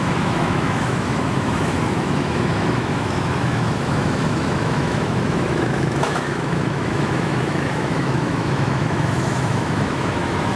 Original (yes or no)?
no